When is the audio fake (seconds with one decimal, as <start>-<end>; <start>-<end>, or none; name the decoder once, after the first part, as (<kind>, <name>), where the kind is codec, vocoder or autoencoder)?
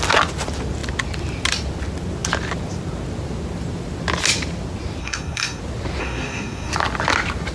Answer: 5.0-5.6 (codec, SNAC); 6.0-6.7